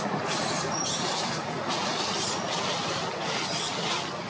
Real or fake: real